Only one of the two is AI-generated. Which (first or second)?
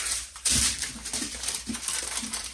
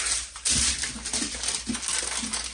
first